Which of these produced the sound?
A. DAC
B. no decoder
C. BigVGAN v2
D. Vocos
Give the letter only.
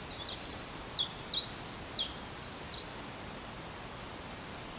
B